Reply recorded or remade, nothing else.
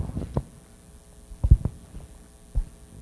recorded